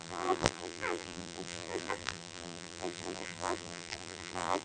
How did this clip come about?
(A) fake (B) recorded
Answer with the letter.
A